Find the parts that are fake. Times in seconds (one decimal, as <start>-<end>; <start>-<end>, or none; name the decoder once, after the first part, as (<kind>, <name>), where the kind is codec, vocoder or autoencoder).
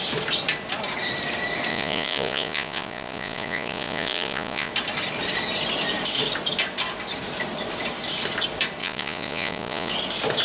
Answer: 1.7-4.7 (vocoder, Vocos); 8.8-9.9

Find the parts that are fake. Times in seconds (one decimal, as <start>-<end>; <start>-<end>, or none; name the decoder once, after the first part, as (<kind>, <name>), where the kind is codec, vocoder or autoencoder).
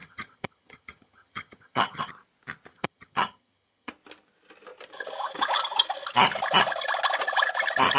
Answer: 0.0-2.1 (vocoder, HiFi-GAN); 2.7-3.9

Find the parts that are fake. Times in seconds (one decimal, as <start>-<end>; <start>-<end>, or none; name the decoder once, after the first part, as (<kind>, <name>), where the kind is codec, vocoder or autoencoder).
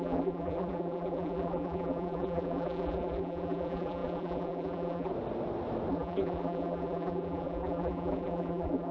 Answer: 0.0-5.1 (vocoder, BigVGAN v2); 5.9-8.9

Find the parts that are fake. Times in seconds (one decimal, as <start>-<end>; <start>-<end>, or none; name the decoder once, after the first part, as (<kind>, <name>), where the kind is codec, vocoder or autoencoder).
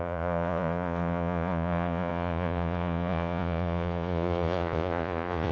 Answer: 0.0-5.5 (vocoder, Vocos)